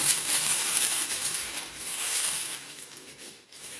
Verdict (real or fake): fake